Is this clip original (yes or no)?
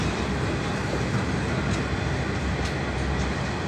yes